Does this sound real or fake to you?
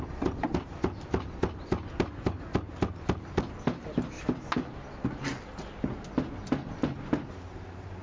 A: real